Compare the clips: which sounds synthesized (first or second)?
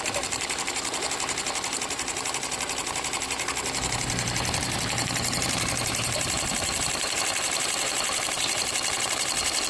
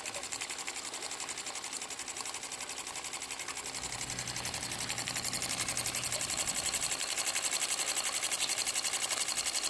first